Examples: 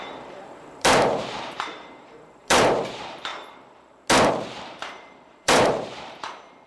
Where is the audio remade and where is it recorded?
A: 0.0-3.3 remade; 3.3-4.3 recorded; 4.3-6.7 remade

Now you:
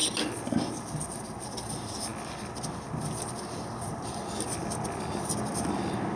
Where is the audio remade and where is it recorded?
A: 0.0-6.2 recorded

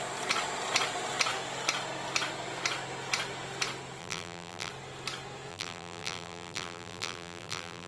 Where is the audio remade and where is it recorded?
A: 0.0-4.0 recorded; 4.0-4.7 remade; 4.7-5.5 recorded; 5.5-7.9 remade

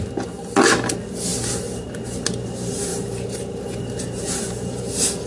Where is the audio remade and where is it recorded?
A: 0.0-1.3 recorded; 1.3-2.0 remade; 2.0-2.9 recorded; 2.9-4.8 remade; 4.8-5.3 recorded

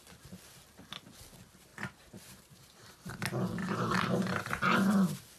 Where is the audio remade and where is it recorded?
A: 0.0-1.7 recorded; 1.7-3.1 remade; 3.1-3.6 recorded; 3.6-4.5 remade; 4.5-5.4 recorded

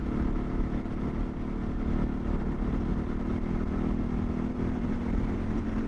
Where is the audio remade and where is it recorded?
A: 0.0-4.5 recorded; 4.5-5.9 remade

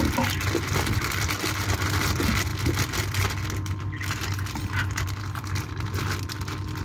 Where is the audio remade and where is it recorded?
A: 0.0-6.8 recorded

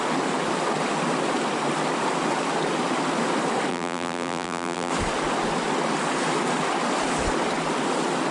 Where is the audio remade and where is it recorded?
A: 0.0-3.7 recorded; 3.7-4.9 remade; 4.9-8.3 recorded